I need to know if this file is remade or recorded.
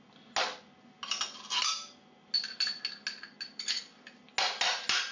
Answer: recorded